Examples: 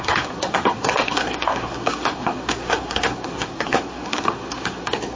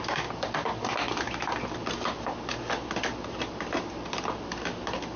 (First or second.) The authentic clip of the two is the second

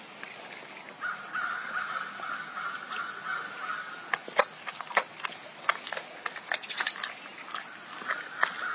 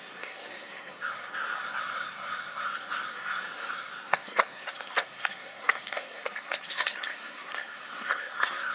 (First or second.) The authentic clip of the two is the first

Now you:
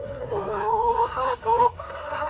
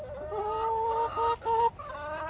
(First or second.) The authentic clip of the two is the second